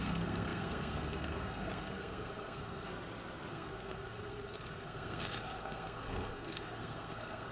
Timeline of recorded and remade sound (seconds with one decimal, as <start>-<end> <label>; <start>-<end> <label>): 0.0-2.9 remade; 2.9-3.5 recorded; 3.5-7.5 remade